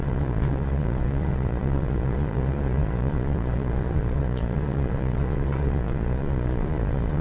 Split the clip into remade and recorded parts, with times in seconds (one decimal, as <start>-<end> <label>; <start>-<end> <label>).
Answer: 0.0-7.2 remade